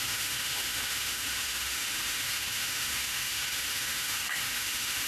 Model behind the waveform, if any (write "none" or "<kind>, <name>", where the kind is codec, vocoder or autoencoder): autoencoder, DAC-VAE